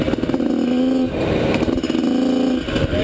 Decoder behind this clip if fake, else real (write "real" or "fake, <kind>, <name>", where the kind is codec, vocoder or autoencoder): real